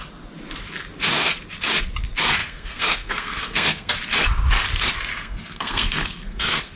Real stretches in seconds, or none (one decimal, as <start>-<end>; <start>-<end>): 0.0-2.4; 3.9-5.1